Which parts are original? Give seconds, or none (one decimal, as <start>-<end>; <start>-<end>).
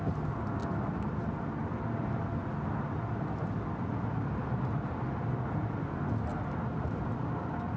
0.0-7.8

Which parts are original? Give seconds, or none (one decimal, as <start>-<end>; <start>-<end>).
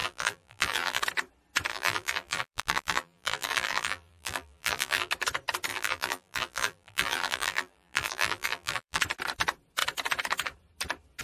1.0-1.7; 5.1-5.7; 9.0-11.2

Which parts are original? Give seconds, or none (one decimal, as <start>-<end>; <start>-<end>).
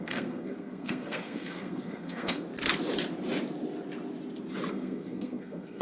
2.5-4.7